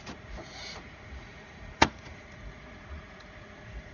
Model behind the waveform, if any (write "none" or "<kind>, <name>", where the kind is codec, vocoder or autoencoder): vocoder, Vocos